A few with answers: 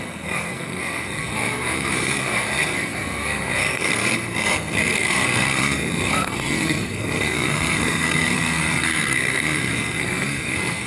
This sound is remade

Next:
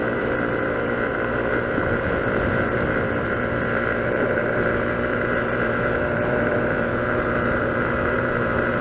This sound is remade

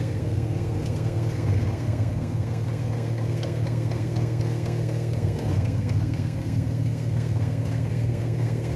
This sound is remade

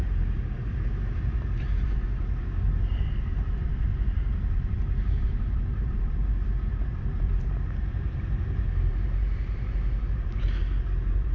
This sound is remade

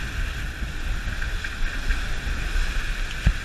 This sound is recorded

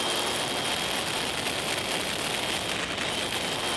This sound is recorded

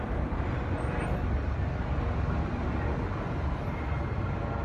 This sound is recorded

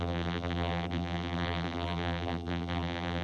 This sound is remade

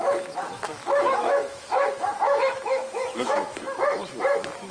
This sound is remade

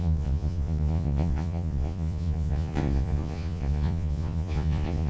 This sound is remade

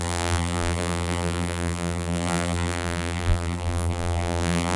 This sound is remade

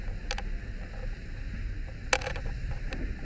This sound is recorded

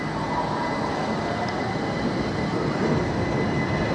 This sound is recorded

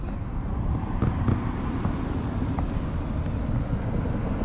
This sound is recorded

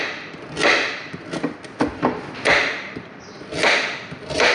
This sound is remade